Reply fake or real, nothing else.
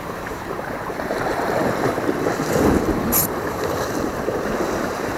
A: fake